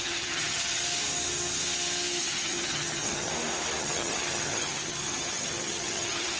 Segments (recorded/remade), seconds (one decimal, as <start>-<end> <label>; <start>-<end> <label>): 0.0-0.8 remade; 0.8-2.2 recorded; 2.2-3.3 remade; 3.3-3.8 recorded; 3.8-6.4 remade